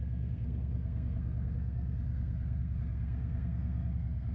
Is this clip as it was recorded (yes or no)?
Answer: no